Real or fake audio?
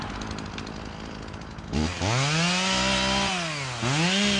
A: real